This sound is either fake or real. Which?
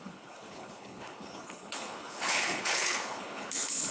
fake